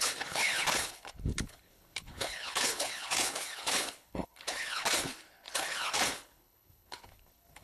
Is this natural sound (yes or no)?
no